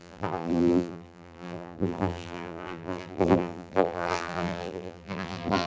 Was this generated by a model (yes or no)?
yes